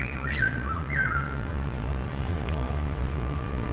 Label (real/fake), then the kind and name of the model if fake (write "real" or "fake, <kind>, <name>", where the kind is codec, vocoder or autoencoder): fake, vocoder, Vocos